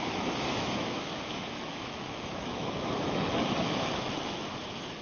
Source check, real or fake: fake